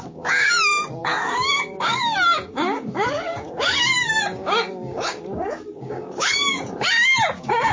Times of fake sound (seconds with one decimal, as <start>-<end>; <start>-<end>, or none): 0.0-7.7